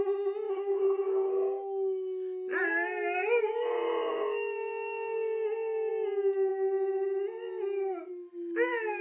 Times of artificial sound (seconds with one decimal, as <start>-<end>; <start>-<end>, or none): 0.5-1.3